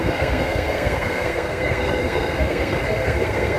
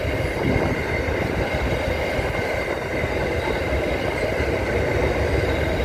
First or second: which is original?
second